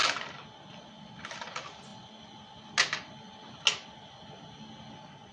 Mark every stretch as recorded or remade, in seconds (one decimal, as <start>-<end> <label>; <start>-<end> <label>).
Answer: 0.0-5.3 recorded